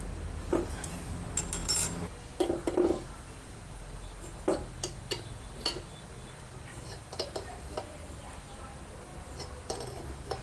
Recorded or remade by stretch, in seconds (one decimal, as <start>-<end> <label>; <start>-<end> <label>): 0.0-6.7 recorded; 6.7-8.6 remade; 8.6-10.4 recorded